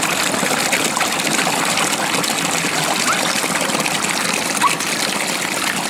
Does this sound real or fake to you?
real